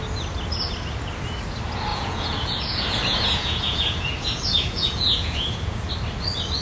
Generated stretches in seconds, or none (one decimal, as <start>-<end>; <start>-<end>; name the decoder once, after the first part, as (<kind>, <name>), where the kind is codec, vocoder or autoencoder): 1.9-5.9 (vocoder, Vocos)

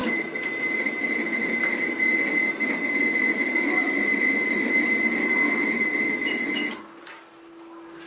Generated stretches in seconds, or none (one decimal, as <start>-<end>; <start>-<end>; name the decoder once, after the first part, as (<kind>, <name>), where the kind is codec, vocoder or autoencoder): 0.0-4.9 (vocoder, BigVGAN v2); 5.4-7.1